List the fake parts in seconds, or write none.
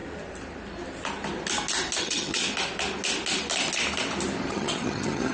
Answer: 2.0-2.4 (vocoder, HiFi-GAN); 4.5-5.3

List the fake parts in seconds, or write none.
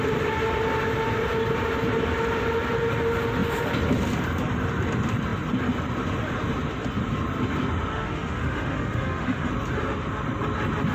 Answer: 7.9-9.5 (autoencoder, DAC-VAE)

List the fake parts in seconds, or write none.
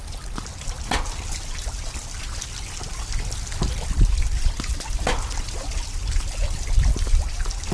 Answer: none